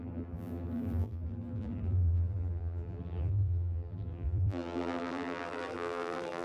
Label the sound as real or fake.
fake